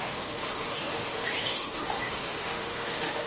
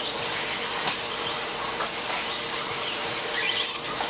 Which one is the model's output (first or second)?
first